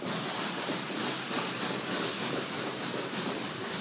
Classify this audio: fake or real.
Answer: real